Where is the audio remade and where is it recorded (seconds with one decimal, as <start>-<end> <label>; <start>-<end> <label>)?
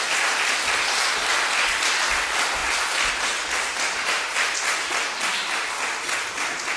0.0-6.8 recorded